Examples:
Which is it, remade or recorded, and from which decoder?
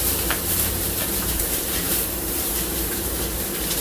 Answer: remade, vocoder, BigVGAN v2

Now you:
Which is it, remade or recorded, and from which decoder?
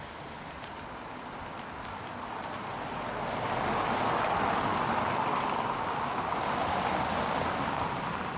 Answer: remade, vocoder, BigVGAN v2